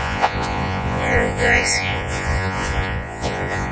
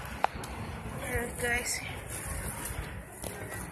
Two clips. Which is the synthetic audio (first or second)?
first